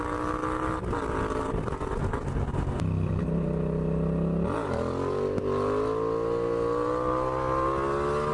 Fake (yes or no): no